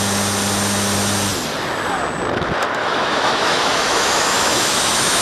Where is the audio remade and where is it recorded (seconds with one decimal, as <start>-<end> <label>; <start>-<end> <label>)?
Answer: 0.0-2.8 recorded; 2.8-5.2 remade